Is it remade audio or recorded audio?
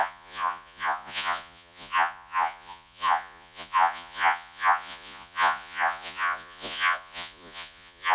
remade